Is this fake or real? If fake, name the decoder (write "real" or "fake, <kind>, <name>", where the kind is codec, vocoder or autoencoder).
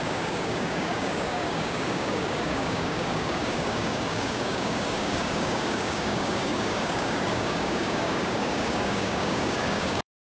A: fake, codec, DAC